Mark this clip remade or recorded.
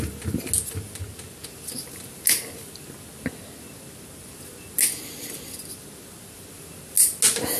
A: recorded